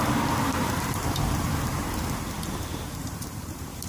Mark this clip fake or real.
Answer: fake